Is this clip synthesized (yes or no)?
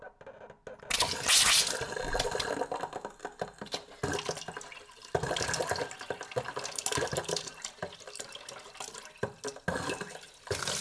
no